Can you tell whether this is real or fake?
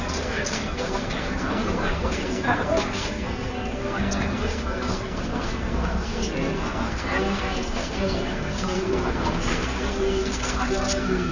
fake